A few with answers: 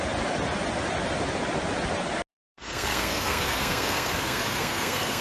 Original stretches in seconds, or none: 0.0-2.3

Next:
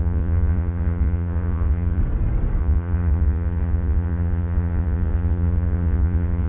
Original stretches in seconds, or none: 2.0-2.6

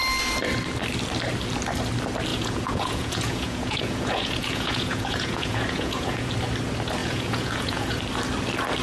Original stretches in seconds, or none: 0.0-2.3; 6.3-7.0; 8.0-8.8

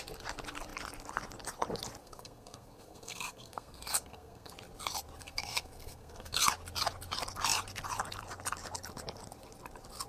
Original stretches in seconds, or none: 0.0-2.0; 4.5-5.2; 6.4-10.1